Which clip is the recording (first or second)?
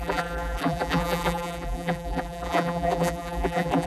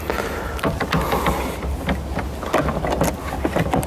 second